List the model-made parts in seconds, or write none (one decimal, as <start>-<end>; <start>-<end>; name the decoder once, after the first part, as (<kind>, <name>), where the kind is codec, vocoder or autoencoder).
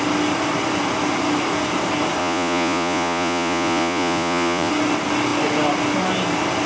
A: 2.2-4.7 (vocoder, Vocos)